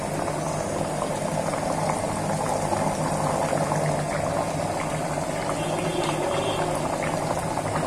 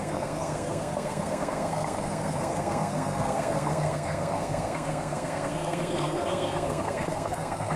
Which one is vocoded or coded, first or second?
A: second